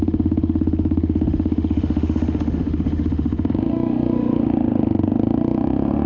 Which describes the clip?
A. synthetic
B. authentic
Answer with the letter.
A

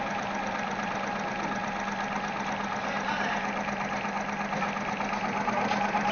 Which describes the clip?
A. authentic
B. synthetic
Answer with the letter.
A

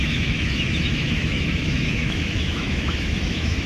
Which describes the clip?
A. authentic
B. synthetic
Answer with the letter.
B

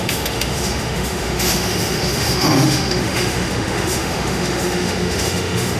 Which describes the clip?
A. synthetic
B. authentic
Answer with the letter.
A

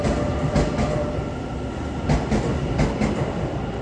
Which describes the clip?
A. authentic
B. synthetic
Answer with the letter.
A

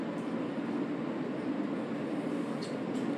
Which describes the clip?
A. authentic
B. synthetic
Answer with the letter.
A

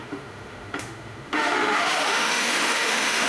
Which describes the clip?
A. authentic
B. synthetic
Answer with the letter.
B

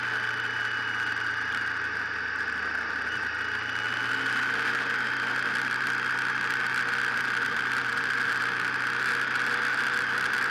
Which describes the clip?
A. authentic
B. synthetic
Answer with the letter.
A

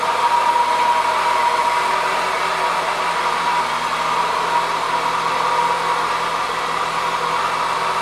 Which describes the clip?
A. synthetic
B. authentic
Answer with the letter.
B